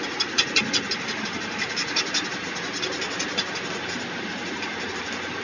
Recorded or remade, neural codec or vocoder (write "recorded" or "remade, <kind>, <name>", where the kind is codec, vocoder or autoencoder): recorded